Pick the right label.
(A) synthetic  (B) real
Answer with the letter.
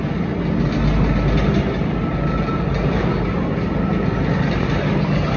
B